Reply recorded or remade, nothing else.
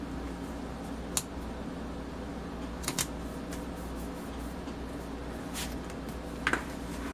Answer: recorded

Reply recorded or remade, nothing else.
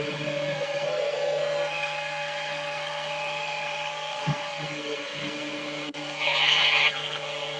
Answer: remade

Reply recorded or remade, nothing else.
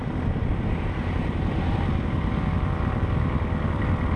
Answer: recorded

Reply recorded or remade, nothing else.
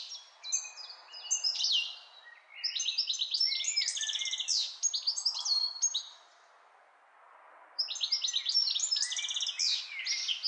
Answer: recorded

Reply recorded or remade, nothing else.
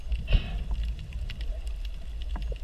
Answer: recorded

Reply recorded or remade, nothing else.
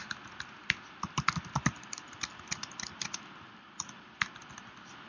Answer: recorded